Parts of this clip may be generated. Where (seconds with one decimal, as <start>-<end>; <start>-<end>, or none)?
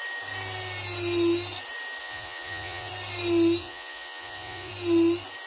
2.0-2.9; 3.6-4.7